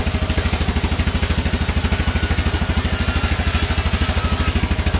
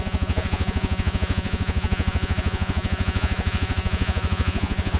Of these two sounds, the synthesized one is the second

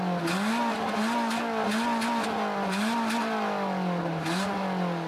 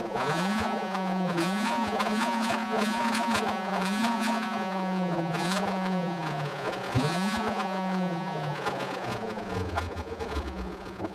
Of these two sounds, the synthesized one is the second